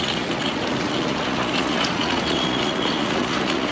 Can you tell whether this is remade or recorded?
remade